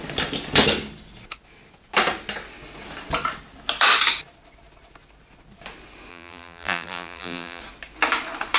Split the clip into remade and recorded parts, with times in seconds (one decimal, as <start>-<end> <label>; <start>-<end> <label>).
0.0-6.1 recorded; 6.1-7.6 remade; 7.6-8.6 recorded